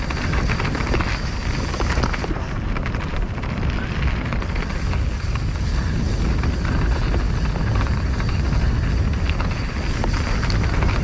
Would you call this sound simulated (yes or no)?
no